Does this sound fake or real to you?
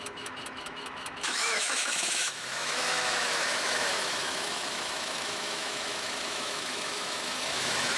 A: fake